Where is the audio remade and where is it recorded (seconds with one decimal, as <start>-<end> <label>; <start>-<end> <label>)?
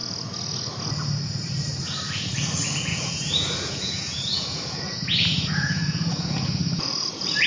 0.0-2.9 recorded; 2.9-7.5 remade